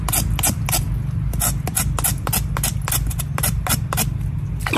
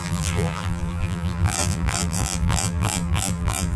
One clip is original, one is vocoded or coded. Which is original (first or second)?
first